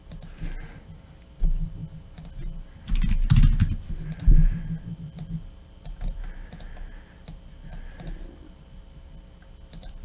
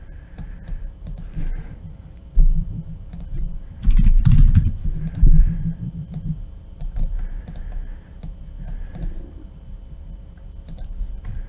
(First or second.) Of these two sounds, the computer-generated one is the second